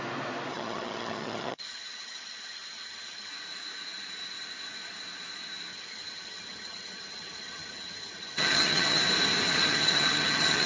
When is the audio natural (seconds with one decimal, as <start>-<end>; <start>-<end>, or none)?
0.0-0.5; 3.3-5.7; 9.0-9.5